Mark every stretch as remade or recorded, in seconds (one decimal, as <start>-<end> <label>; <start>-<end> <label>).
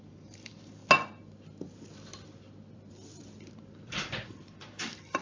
0.0-0.8 remade; 0.8-3.9 recorded; 3.9-5.2 remade